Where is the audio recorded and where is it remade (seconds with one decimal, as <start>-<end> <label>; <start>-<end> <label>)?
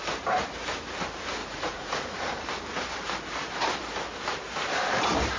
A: 0.0-1.4 recorded; 1.4-2.4 remade; 2.4-5.4 recorded